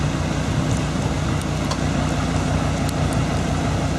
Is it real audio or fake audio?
real